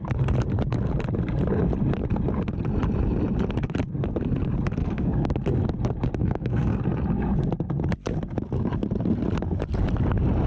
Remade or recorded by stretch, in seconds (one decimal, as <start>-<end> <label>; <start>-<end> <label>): 0.0-4.8 recorded; 4.8-5.3 remade; 5.3-6.2 recorded; 6.2-6.8 remade; 6.8-10.5 recorded